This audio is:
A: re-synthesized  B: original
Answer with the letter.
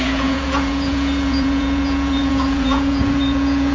A